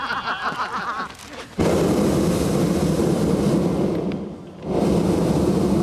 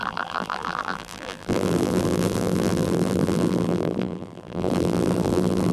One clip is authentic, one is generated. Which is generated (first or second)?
second